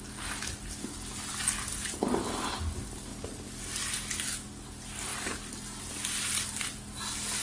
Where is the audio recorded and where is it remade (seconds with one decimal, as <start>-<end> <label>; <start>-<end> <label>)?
0.0-7.4 recorded